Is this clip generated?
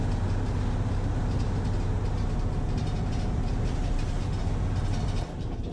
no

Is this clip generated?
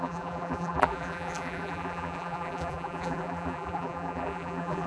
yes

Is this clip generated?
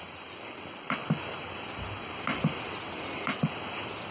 no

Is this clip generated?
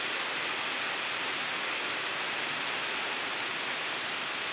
no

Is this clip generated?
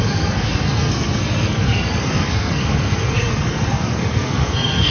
yes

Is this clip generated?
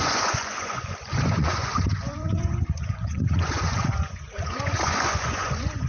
yes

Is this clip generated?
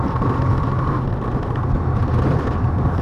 no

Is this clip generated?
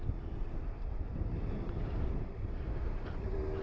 no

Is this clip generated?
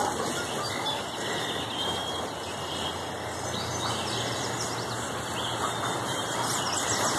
no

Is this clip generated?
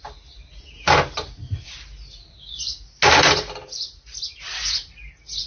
no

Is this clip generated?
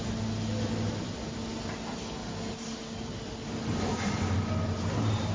no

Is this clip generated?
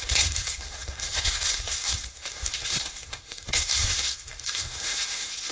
yes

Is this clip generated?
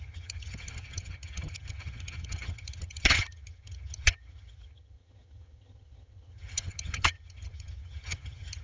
yes